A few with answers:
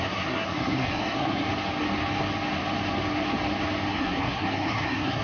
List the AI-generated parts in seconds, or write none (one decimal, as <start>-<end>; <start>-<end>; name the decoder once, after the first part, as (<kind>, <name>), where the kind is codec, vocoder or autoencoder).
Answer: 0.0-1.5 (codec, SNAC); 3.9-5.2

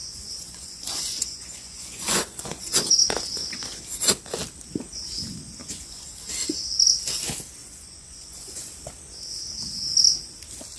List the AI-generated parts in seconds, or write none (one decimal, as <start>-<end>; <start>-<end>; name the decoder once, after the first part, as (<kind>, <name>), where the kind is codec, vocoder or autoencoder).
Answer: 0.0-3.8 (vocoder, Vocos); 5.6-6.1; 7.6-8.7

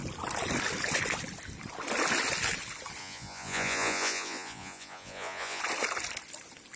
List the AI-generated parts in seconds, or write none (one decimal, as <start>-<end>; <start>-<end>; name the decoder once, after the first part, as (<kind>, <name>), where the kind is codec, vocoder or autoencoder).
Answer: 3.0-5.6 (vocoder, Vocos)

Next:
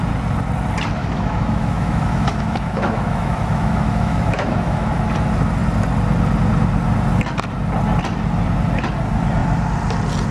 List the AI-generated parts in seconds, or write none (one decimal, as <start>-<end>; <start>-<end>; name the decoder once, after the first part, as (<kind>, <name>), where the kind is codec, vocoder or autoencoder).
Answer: 1.0-4.9 (autoencoder, DAC-VAE)

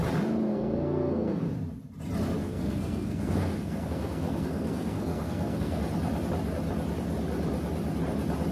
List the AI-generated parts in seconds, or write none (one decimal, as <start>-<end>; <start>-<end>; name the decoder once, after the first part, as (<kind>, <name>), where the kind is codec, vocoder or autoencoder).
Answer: 0.5-1.5 (codec, SNAC); 2.4-5.8

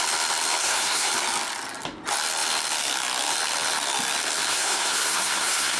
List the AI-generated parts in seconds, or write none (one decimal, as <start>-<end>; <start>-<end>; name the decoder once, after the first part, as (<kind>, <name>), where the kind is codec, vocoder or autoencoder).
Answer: 0.6-1.1 (codec, SNAC); 4.5-5.8

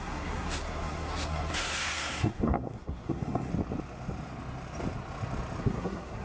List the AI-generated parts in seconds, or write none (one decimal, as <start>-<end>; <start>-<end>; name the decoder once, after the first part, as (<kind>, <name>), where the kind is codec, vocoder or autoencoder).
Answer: 0.0-3.5 (codec, SNAC); 5.6-6.2